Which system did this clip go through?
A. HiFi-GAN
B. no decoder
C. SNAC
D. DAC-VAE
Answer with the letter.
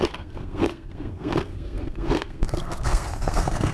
C